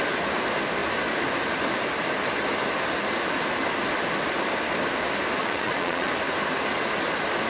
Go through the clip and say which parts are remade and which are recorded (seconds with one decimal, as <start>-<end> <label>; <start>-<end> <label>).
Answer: 0.0-5.4 recorded; 5.4-6.1 remade; 6.1-7.5 recorded